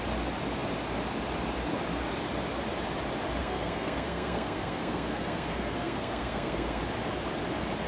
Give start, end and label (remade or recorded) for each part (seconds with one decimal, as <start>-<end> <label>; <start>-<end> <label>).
0.0-3.4 recorded; 3.4-6.8 remade; 6.8-7.9 recorded